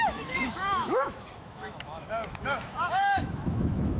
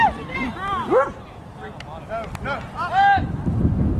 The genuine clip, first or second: second